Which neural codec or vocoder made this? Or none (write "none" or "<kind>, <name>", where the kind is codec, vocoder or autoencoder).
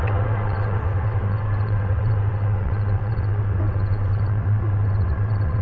vocoder, WaveNeXt